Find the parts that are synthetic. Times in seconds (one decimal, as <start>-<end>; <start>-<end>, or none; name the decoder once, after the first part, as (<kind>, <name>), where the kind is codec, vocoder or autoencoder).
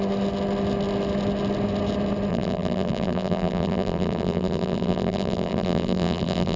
2.3-6.6 (vocoder, BigVGAN v2)